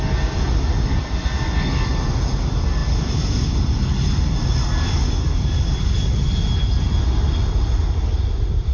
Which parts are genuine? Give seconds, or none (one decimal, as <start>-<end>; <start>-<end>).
0.0-8.7